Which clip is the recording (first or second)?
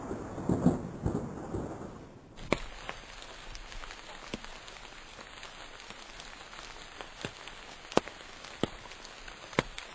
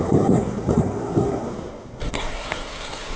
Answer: first